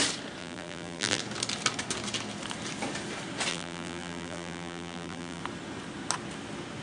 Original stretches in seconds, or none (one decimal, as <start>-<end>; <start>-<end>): 0.0-0.4; 1.2-3.5; 5.4-6.8